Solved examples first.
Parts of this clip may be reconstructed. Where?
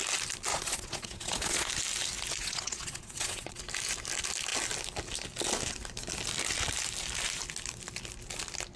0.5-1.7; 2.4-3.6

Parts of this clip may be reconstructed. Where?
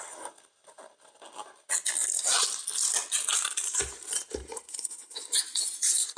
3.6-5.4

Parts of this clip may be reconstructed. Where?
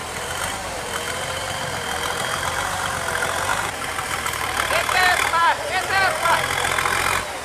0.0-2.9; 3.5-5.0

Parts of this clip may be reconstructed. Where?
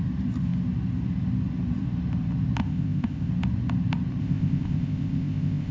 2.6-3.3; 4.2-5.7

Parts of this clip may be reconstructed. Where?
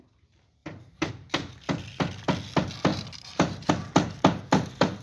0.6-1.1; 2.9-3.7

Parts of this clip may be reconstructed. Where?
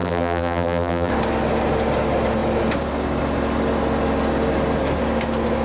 0.0-1.1